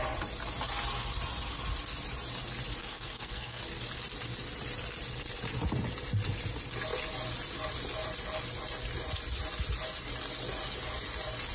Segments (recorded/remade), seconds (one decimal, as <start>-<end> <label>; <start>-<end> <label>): 0.0-2.8 recorded; 2.8-3.6 remade; 3.6-11.5 recorded